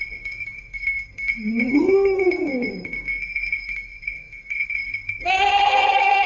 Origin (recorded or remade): remade